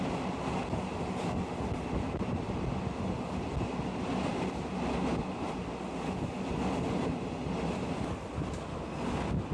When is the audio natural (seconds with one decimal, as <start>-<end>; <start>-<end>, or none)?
0.0-9.5

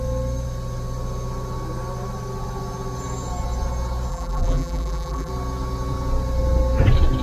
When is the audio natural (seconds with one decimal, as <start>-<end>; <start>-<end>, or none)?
0.0-4.1; 5.3-7.2

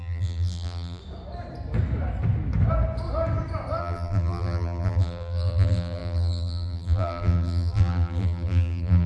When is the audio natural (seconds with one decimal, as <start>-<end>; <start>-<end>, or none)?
1.0-3.8

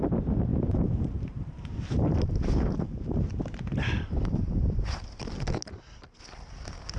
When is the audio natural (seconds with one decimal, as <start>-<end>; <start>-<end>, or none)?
0.0-0.5; 4.4-7.0